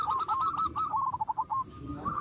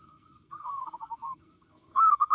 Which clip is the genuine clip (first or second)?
first